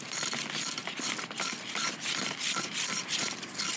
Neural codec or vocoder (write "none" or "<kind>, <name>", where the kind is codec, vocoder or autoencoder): none